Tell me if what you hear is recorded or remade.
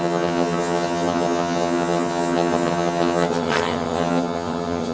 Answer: remade